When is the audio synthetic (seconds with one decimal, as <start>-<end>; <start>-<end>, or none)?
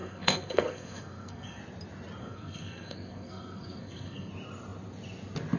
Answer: 0.0-1.6; 2.2-4.3